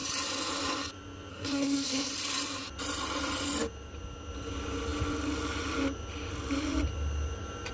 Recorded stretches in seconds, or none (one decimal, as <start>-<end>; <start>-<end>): 0.0-1.3; 2.1-7.7

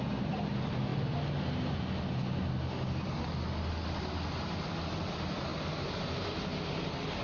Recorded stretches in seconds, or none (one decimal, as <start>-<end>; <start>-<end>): 0.0-7.2